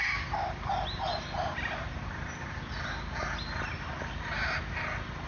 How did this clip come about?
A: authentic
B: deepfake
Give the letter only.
A